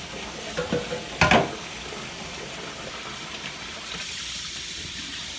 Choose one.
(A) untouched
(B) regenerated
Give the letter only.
A